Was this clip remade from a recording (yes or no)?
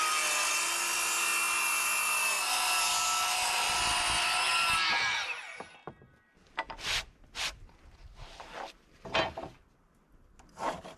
no